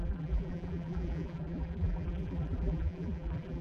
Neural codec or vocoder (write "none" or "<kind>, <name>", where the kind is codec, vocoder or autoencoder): vocoder, BigVGAN v2